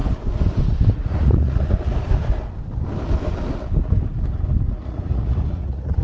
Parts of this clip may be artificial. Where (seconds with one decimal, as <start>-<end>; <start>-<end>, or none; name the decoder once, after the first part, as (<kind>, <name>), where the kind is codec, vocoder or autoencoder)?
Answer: 0.9-1.9 (vocoder, Vocos); 4.7-6.0